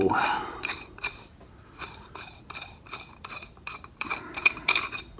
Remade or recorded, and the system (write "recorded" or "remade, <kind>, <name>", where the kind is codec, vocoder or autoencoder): remade, vocoder, BigVGAN v2